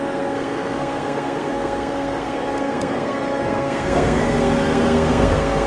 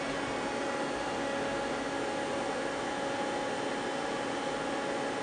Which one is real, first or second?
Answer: second